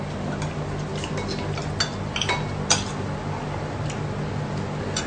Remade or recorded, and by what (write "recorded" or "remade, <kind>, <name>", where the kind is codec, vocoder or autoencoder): recorded